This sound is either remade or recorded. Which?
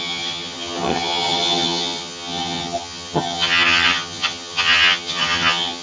remade